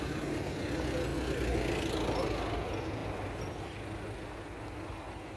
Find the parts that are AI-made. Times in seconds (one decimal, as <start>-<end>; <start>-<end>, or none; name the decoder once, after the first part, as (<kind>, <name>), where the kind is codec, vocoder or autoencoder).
none